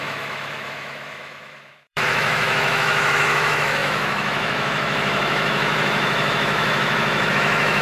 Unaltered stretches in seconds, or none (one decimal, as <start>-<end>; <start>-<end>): none